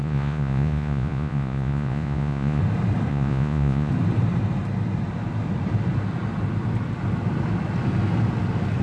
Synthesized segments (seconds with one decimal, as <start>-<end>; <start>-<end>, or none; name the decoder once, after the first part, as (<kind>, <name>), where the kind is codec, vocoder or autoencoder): 0.0-2.6 (vocoder, Vocos); 3.1-3.9